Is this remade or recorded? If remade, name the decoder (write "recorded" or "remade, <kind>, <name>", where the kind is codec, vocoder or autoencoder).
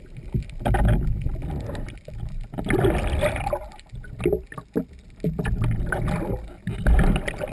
recorded